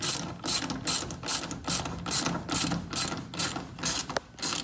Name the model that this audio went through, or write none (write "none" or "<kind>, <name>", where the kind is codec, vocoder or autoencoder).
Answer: none